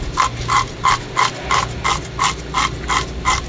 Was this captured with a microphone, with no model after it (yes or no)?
yes